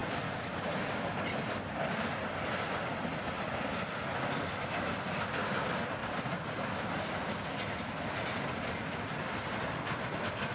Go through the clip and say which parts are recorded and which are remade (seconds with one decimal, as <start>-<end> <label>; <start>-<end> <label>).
0.0-3.7 remade; 3.7-6.0 recorded; 6.0-7.1 remade; 7.1-10.5 recorded